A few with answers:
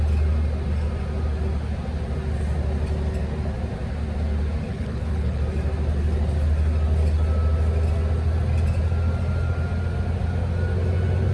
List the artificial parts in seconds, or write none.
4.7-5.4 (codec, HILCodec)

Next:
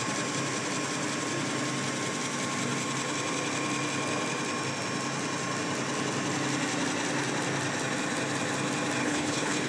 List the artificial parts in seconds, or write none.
9.0-9.7 (codec, HILCodec)

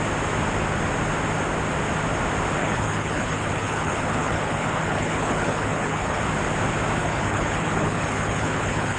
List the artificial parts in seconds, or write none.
2.6-6.2 (codec, HILCodec); 7.0-9.0

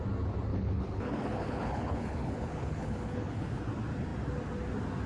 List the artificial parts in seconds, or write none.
0.5-3.6 (codec, HILCodec)

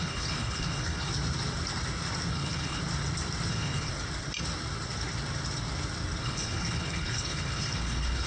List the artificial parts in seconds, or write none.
0.0-1.1 (codec, HILCodec); 2.3-2.8; 3.5-3.9; 6.2-8.3